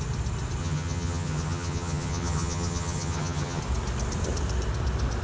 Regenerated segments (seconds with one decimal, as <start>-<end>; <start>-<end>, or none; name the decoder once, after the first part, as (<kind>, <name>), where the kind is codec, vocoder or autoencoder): 0.6-3.6 (vocoder, HiFi-GAN)